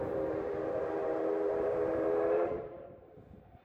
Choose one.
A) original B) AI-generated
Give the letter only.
B